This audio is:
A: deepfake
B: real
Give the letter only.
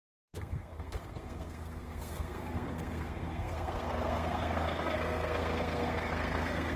A